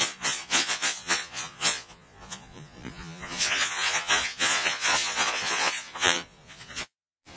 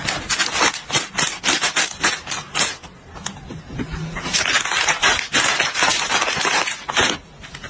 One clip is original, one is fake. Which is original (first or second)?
second